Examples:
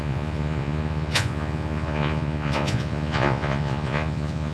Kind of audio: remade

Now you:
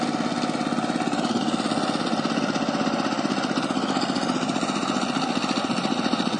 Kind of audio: recorded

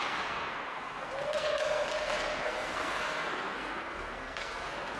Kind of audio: remade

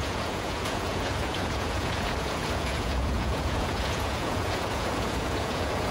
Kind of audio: remade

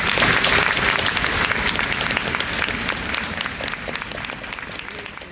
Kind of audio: recorded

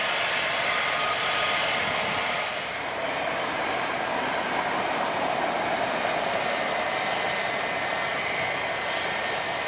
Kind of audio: recorded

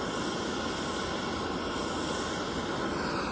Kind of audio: recorded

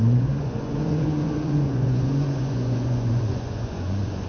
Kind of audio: remade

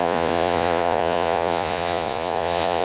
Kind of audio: remade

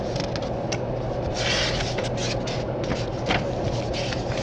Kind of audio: recorded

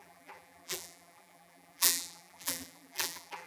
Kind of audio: remade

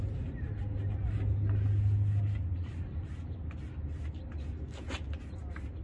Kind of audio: recorded